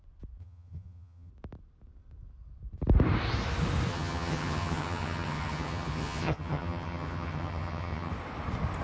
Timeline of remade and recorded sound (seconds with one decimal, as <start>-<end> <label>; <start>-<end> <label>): 0.0-0.4 recorded; 0.4-1.3 remade; 1.3-3.9 recorded; 3.9-8.1 remade; 8.1-8.8 recorded